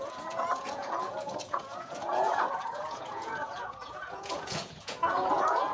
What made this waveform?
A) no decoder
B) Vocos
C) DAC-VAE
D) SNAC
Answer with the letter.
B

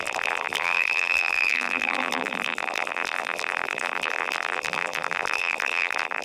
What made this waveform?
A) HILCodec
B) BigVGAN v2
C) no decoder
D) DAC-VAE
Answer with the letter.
B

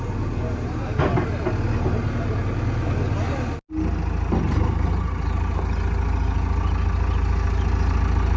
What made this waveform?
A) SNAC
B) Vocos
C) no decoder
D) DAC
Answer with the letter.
C